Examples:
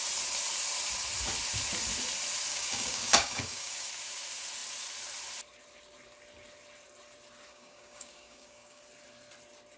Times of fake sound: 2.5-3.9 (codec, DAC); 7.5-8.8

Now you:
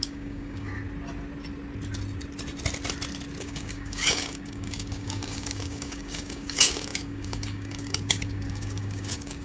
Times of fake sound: 0.0-0.7 (codec, DAC); 3.4-9.4

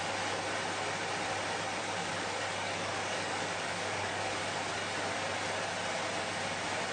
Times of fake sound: 1.8-4.4 (codec, DAC)

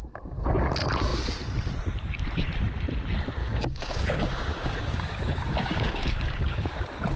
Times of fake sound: 3.4-6.8 (codec, DAC)

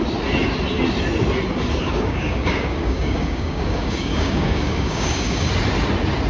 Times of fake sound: 1.8-5.5 (codec, DAC)